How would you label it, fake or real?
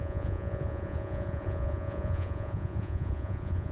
fake